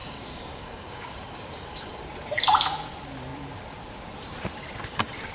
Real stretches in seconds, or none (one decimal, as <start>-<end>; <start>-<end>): 2.0-5.3